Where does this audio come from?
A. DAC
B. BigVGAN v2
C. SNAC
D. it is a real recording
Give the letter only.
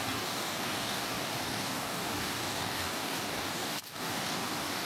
A